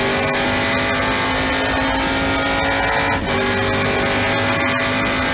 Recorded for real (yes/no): yes